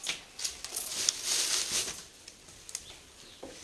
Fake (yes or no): no